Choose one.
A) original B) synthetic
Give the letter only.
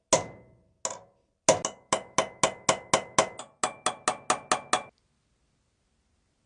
A